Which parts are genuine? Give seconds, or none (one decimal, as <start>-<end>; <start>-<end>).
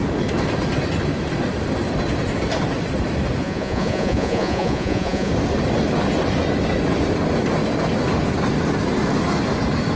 0.0-3.4; 5.3-10.0